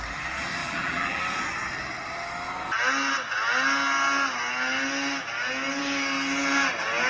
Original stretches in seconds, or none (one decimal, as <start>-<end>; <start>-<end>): 0.0-0.6; 1.2-7.1